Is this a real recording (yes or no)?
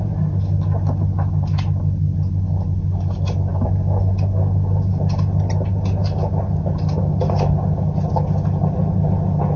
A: yes